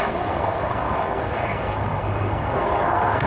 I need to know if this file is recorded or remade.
remade